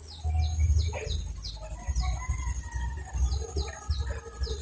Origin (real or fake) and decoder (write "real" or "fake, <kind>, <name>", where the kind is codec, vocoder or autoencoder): real